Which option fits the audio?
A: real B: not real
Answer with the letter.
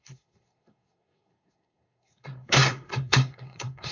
B